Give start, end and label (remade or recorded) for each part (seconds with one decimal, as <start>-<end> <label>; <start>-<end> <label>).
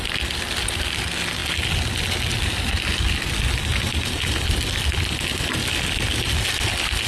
0.0-7.1 recorded